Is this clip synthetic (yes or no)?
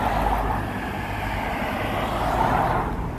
no